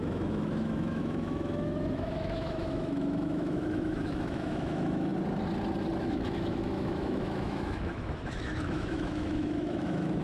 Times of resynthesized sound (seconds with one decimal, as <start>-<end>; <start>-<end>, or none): 0.0-5.1; 6.0-10.2